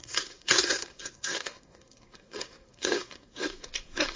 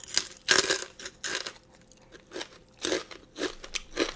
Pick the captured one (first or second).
second